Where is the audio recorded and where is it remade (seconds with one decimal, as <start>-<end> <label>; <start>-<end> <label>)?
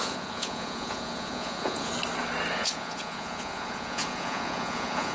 0.0-1.9 remade; 1.9-2.5 recorded; 2.5-5.1 remade